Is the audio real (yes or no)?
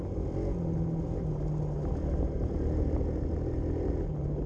yes